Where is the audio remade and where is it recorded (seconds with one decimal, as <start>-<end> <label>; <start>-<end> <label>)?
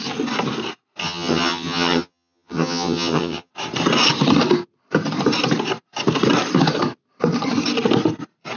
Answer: 0.0-1.0 recorded; 1.0-3.5 remade; 3.5-8.6 recorded